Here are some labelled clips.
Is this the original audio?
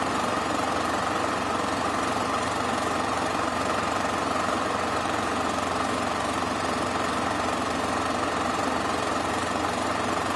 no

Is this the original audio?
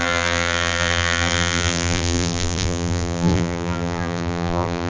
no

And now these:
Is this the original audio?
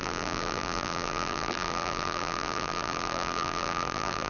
no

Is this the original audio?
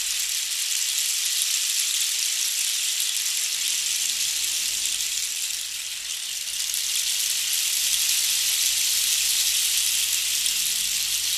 yes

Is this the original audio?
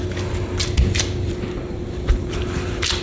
yes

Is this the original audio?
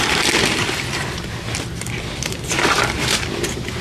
yes